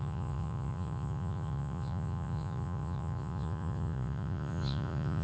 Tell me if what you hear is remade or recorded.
remade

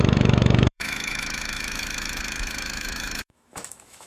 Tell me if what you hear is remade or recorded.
remade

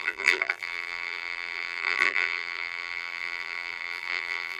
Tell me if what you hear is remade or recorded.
remade